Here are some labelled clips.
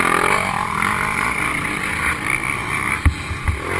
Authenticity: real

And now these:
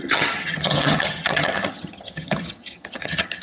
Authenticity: fake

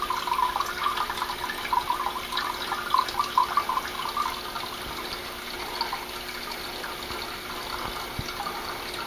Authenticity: real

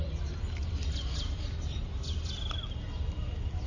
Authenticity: real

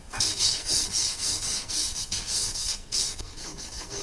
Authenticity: fake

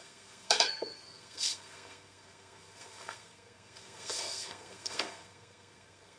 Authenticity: fake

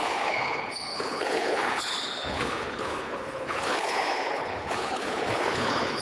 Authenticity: fake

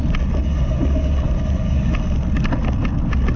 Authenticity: real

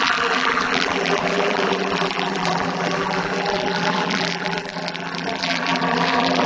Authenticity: fake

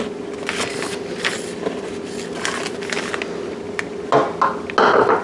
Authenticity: real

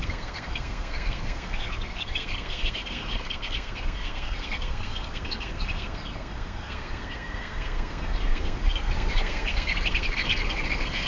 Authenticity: fake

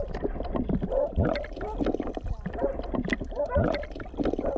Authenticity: real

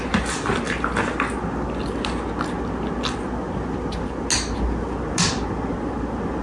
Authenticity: real